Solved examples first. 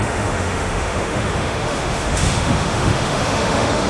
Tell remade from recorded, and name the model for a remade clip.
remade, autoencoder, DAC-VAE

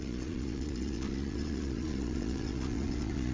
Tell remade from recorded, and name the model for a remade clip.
remade, vocoder, Vocos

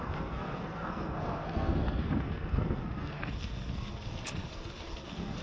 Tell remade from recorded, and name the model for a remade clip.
remade, codec, SNAC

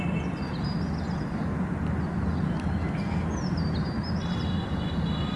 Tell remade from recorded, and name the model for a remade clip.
recorded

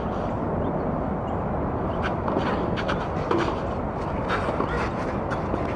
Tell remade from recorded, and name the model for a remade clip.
recorded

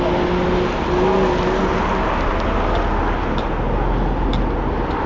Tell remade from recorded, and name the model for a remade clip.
recorded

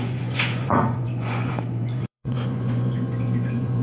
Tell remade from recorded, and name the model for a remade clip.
remade, vocoder, Vocos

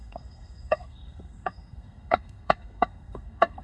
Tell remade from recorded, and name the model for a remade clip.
remade, codec, SNAC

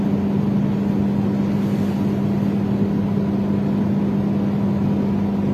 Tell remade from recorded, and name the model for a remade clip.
recorded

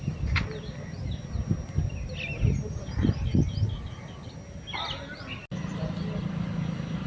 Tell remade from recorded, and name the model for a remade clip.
recorded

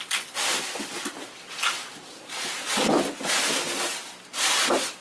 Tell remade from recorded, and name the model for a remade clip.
recorded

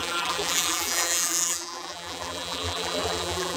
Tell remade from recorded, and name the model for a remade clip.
remade, vocoder, BigVGAN v2